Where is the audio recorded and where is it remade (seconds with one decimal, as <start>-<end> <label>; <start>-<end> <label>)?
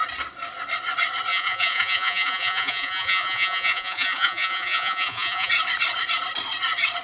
0.0-1.3 recorded; 1.3-5.5 remade; 5.5-7.0 recorded